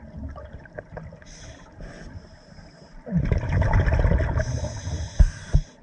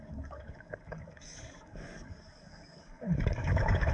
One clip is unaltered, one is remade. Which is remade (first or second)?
second